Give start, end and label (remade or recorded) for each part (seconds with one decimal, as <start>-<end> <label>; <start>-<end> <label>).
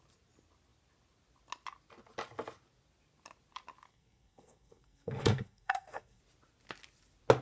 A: 0.0-3.9 recorded; 3.9-6.2 remade; 6.2-7.4 recorded